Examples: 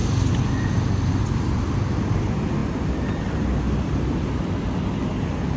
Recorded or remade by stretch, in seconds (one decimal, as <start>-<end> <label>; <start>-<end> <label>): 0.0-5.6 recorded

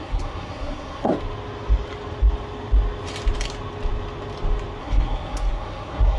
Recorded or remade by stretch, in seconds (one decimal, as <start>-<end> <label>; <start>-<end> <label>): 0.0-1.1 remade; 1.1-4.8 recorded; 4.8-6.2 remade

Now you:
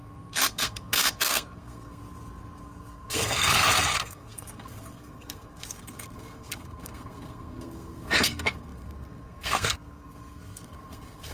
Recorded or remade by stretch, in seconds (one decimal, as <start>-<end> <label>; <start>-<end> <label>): 0.0-2.0 remade; 2.0-2.6 recorded; 2.6-11.3 remade

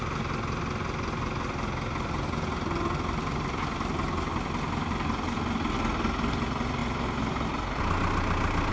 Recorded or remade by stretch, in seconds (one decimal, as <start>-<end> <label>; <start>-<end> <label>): 0.0-8.7 recorded

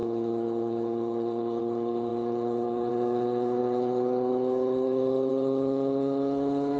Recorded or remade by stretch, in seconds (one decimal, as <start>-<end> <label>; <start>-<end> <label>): 0.0-6.8 remade

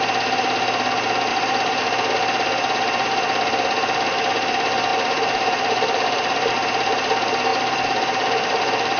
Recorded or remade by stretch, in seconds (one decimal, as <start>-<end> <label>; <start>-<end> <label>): 0.0-1.3 recorded; 1.3-1.8 remade; 1.8-4.9 recorded; 4.9-6.5 remade; 6.5-7.5 recorded; 7.5-9.0 remade

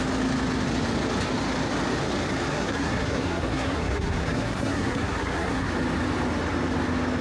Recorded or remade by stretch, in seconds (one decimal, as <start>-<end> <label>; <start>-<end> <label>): 0.0-2.5 recorded; 2.5-5.7 remade; 5.7-7.2 recorded